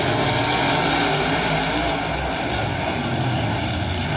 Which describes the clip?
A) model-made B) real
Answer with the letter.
B